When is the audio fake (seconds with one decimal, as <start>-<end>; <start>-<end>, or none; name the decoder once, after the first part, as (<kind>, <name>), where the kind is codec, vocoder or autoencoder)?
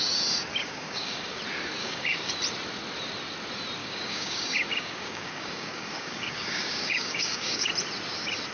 0.5-1.4 (codec, DAC); 1.8-2.3; 3.8-7.7